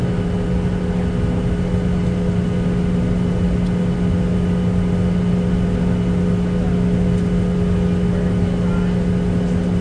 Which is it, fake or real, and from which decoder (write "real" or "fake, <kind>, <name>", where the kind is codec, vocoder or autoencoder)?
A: real